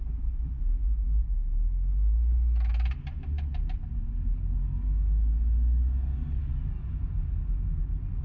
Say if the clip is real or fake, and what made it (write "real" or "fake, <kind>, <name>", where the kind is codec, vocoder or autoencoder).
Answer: real